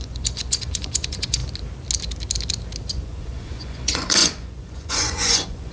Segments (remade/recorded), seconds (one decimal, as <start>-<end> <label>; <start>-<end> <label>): 0.0-1.4 remade; 1.4-2.9 recorded; 2.9-5.7 remade